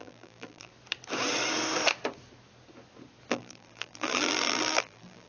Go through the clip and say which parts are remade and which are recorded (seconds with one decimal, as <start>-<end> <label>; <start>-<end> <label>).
0.0-0.7 remade; 0.7-3.3 recorded; 3.3-5.3 remade